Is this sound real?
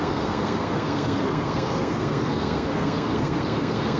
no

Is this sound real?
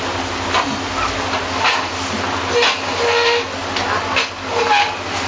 yes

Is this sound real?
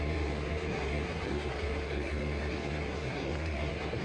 no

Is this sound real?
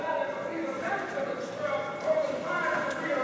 yes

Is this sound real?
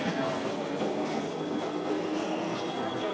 no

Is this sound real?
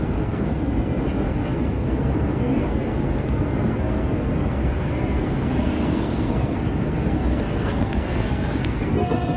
no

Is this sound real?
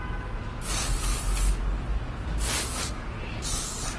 yes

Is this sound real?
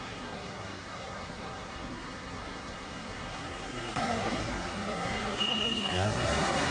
no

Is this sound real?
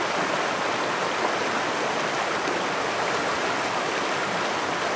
yes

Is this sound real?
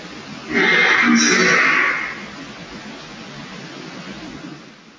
yes